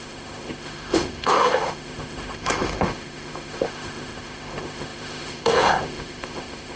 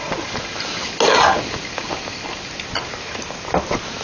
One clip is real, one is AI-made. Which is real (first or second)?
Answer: second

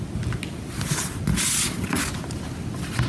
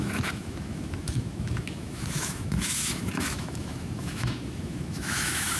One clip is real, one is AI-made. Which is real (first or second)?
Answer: first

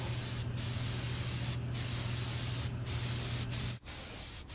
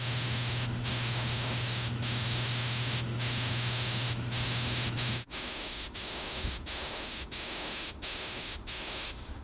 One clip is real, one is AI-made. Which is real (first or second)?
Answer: first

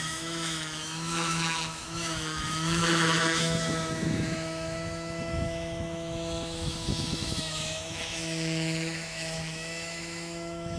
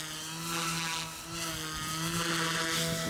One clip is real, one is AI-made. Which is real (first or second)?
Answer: second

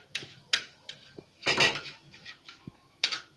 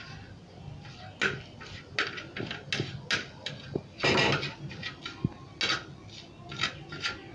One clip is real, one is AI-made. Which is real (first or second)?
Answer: second